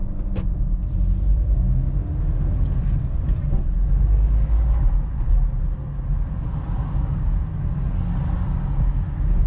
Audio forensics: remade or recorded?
recorded